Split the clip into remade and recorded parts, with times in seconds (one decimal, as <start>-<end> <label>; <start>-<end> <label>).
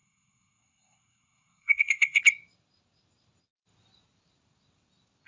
0.0-2.2 remade; 2.2-5.3 recorded